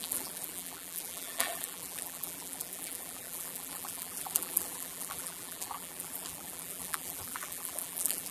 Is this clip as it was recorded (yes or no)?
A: no